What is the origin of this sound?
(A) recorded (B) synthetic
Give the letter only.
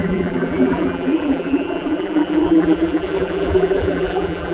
B